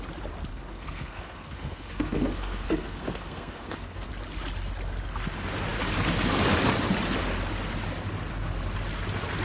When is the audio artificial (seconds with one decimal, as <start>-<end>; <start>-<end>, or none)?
0.5-4.1